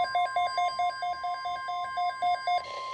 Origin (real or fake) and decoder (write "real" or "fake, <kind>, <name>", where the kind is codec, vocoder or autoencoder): real